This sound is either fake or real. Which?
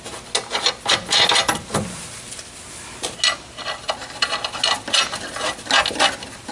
real